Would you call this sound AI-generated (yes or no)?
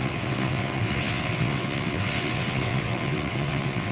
yes